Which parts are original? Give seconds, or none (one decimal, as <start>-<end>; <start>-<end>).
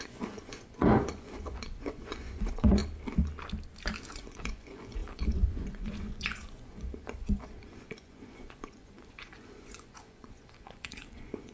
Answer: 2.8-4.1